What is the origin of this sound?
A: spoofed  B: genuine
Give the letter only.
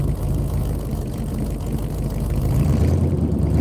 A